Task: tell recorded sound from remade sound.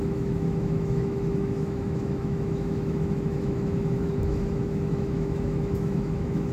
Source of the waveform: remade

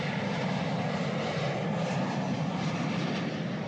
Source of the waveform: recorded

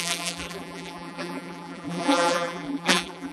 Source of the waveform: remade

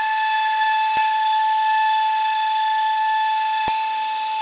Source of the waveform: recorded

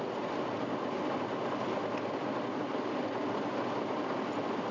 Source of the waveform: recorded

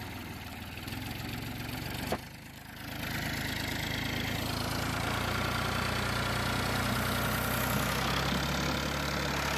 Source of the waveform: recorded